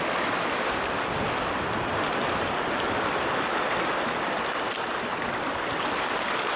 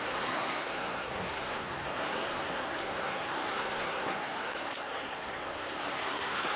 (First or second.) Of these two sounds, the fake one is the second